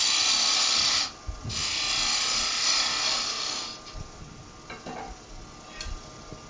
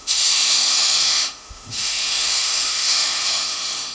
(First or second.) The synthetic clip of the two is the second